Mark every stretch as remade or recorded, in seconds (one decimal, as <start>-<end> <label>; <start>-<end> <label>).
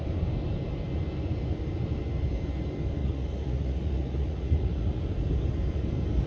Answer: 0.0-3.0 recorded; 3.0-5.0 remade; 5.0-6.3 recorded